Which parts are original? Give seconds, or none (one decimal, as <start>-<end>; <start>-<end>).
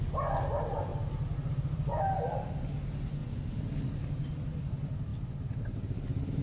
0.0-6.4